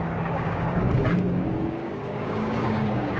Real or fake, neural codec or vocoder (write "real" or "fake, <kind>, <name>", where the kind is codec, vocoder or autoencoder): fake, codec, DAC